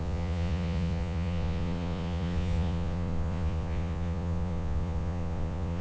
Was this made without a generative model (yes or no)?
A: no